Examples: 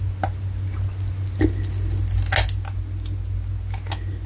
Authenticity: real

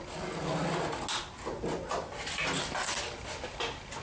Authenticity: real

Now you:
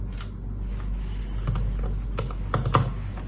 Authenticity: real